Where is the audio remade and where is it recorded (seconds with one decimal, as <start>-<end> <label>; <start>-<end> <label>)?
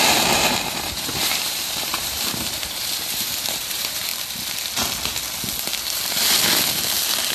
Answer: 0.0-4.1 remade; 4.1-7.3 recorded